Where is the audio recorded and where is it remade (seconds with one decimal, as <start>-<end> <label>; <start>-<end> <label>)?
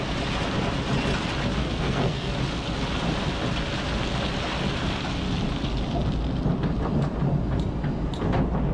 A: 0.0-1.6 recorded; 1.6-2.3 remade; 2.3-8.7 recorded